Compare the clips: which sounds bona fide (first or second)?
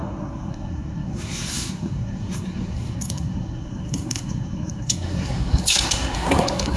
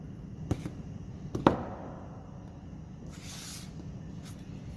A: second